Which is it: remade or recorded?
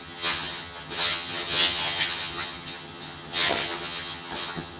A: remade